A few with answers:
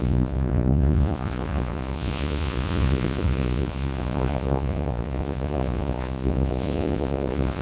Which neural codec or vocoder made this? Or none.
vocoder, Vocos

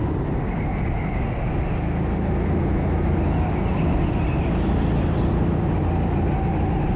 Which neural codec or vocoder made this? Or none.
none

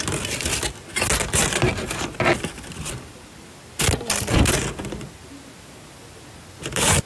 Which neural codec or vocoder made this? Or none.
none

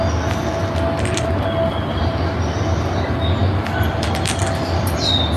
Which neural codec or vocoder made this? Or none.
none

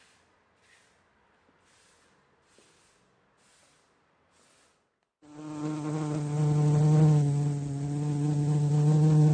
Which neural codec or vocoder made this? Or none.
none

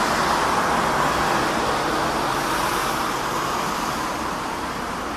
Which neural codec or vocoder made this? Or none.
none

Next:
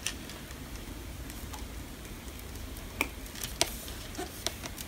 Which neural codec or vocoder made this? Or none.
none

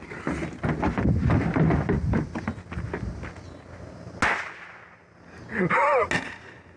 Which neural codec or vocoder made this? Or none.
none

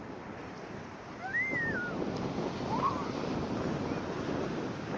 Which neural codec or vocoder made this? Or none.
none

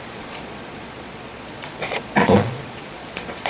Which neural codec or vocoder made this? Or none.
vocoder, Vocos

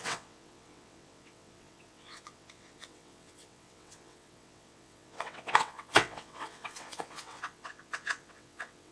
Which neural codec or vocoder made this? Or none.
vocoder, WaveNeXt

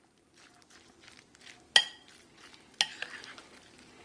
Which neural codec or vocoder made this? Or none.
none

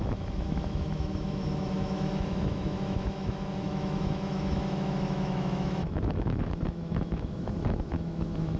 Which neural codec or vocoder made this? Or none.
autoencoder, DAC-VAE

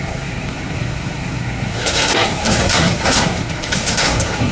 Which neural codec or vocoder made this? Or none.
codec, SNAC